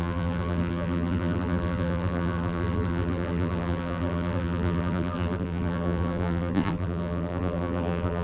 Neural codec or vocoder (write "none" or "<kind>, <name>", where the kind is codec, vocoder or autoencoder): vocoder, BigVGAN v2